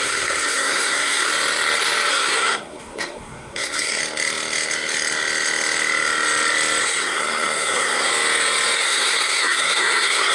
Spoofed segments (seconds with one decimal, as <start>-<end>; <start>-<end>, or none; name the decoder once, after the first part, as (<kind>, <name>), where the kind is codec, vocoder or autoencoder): 0.0-1.3 (codec, SNAC); 2.1-4.0; 6.8-8.1; 8.8-10.3